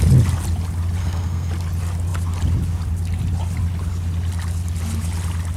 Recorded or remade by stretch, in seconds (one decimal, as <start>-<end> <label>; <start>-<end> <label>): 0.0-1.0 recorded; 1.0-1.5 remade; 1.5-5.6 recorded